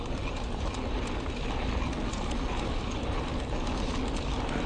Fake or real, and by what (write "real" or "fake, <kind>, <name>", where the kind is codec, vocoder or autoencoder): real